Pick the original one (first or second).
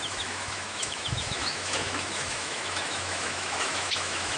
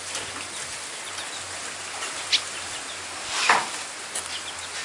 second